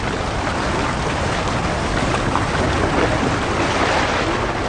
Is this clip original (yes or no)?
yes